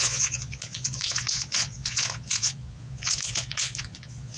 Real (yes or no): no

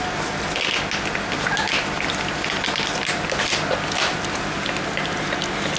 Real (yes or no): yes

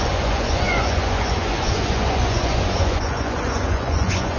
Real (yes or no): no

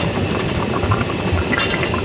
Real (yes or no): yes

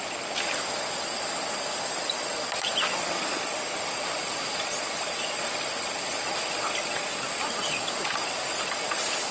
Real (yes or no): yes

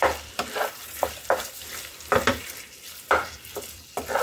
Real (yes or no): no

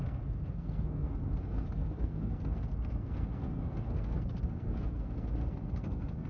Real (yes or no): no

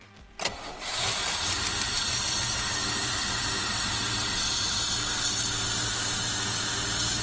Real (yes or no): yes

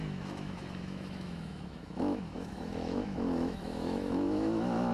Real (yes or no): no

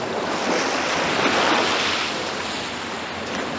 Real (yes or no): yes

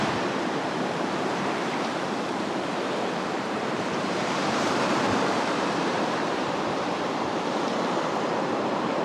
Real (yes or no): no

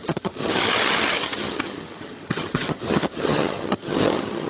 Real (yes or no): no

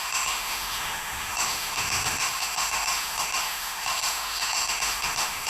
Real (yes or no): no